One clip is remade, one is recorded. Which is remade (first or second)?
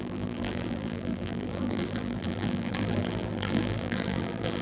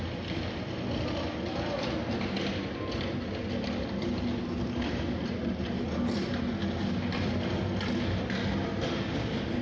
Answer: first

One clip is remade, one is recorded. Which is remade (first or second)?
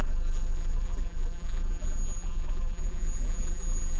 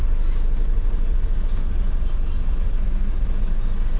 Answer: first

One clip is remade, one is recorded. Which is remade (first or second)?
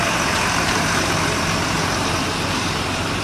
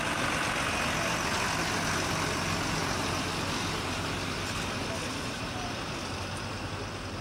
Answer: first